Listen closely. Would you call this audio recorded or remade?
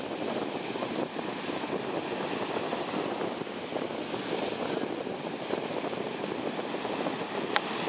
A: recorded